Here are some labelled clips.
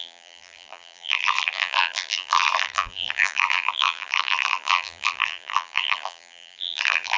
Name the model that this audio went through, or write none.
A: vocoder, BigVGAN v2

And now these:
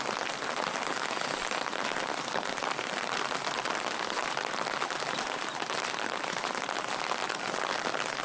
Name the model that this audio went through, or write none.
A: vocoder, BigVGAN v2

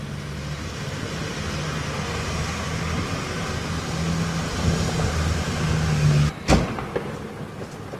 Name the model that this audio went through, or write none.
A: none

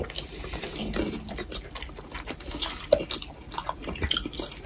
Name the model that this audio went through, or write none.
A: none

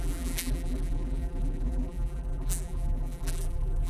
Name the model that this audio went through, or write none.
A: vocoder, BigVGAN v2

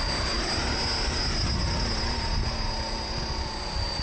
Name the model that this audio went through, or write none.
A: none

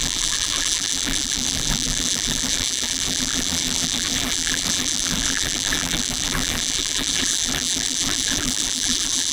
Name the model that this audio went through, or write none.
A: vocoder, BigVGAN v2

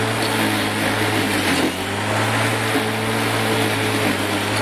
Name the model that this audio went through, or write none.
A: none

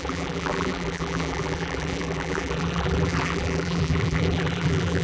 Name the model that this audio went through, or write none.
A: vocoder, BigVGAN v2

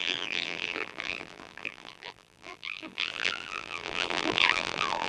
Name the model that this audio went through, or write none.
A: vocoder, BigVGAN v2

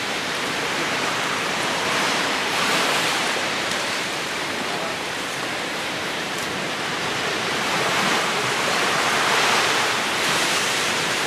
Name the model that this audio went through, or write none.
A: vocoder, BigVGAN v2